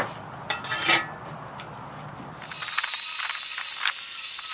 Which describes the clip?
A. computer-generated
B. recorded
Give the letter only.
B